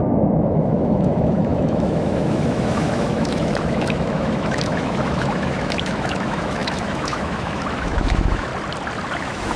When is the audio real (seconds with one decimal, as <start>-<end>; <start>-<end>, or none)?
8.5-9.2